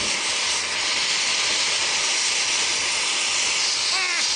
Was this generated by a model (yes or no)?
no